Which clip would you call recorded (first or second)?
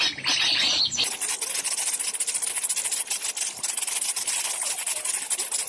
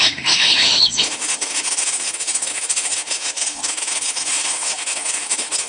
first